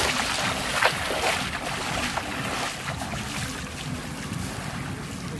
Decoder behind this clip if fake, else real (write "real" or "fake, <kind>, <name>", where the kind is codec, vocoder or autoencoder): real